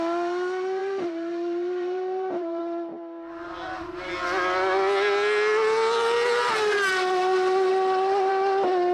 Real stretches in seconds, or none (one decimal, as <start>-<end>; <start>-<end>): 0.0-0.8; 2.6-7.7; 8.3-8.9